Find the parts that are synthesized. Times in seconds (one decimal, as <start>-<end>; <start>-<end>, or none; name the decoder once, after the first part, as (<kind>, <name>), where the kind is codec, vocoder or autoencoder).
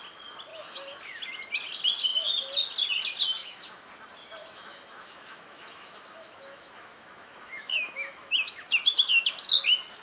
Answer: 0.5-1.0 (autoencoder, DAC-VAE); 3.4-3.9; 4.4-9.3